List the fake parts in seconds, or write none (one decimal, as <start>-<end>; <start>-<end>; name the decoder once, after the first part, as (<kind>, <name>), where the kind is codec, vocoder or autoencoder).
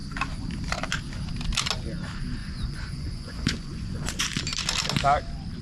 2.4-4.1 (vocoder, Vocos)